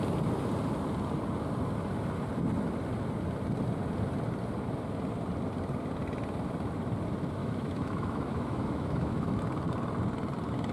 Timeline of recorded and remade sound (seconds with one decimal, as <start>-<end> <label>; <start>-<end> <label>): 0.0-7.4 recorded; 7.4-9.4 remade; 9.4-10.7 recorded